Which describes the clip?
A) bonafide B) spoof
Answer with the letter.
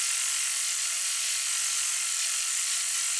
A